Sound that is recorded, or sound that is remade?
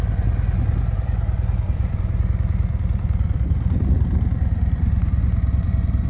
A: remade